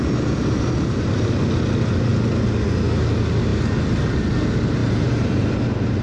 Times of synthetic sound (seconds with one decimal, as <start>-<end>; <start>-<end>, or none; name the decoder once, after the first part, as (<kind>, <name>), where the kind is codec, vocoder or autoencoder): 4.8-5.5 (vocoder, BigVGAN v2)